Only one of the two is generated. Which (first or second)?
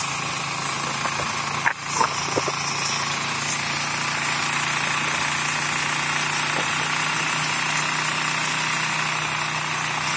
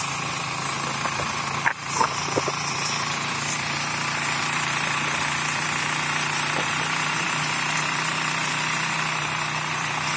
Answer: second